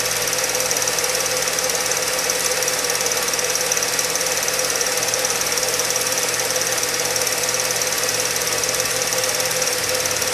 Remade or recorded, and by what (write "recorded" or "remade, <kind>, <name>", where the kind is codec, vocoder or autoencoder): recorded